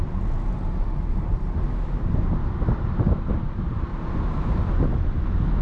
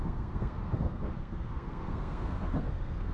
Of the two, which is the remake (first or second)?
second